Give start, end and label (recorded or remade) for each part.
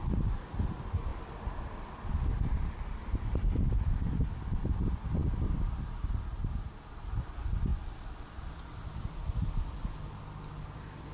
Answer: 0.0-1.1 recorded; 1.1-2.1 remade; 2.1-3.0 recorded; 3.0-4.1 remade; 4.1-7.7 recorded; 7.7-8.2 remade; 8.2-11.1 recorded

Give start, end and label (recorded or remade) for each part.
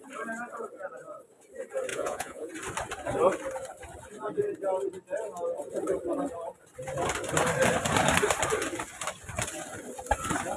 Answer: 0.0-1.9 recorded; 1.9-2.5 remade; 2.5-10.6 recorded